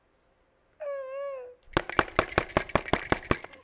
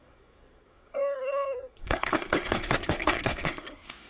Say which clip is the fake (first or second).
second